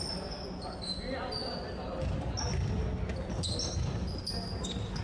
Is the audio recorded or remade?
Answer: recorded